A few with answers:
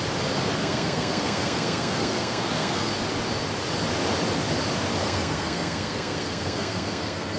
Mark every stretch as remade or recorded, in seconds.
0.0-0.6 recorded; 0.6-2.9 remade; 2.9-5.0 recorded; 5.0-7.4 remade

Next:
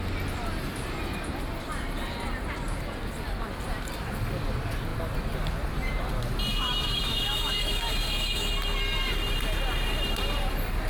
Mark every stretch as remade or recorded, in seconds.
0.0-6.5 recorded; 6.5-8.5 remade; 8.5-10.9 recorded

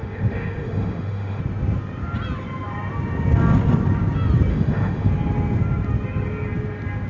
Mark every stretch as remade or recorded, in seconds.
0.0-1.4 remade; 1.4-4.5 recorded; 4.5-5.1 remade; 5.1-7.1 recorded